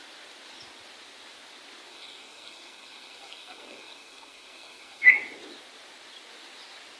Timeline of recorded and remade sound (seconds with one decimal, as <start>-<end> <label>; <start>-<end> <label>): 0.0-1.9 recorded; 1.9-5.1 remade; 5.1-7.0 recorded